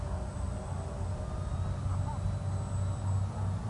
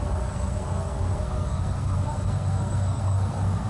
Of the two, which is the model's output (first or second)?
second